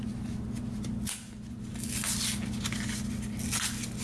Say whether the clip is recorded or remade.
recorded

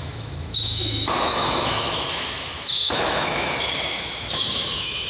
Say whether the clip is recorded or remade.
remade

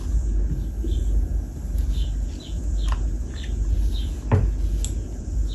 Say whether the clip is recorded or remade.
recorded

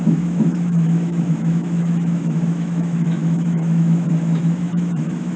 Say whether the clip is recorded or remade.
remade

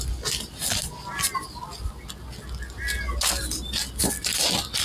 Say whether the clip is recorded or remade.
recorded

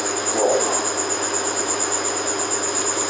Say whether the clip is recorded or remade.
recorded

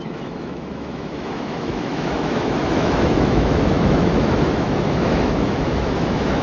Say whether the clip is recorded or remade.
remade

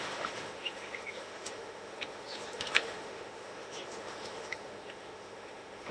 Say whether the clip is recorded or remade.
remade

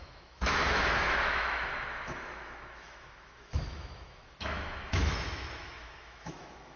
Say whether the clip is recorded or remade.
remade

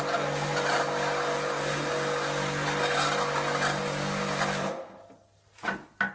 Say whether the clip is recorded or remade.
recorded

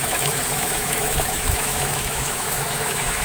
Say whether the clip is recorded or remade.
remade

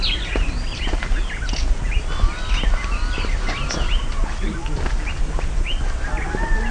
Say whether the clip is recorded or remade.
recorded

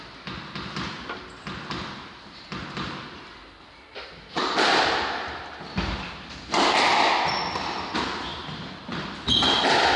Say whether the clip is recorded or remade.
recorded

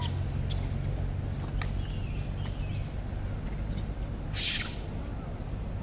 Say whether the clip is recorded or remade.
recorded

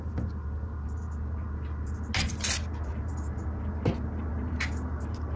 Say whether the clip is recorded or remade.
recorded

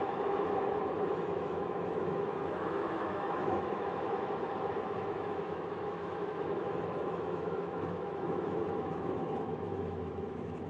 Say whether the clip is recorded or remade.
remade